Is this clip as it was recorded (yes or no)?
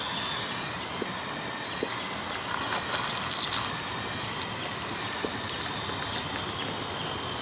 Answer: yes